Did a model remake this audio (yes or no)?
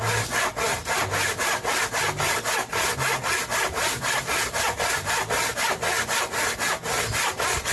no